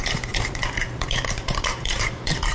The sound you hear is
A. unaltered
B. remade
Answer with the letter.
B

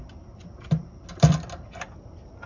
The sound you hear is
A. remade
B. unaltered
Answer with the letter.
B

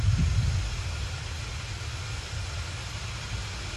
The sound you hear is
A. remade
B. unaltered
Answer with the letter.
B